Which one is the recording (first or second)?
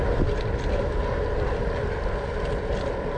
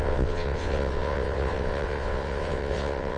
first